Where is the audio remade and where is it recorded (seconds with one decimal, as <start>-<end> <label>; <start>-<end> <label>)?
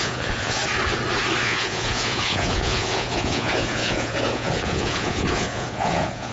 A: 0.0-0.6 remade; 0.6-1.4 recorded; 1.4-6.3 remade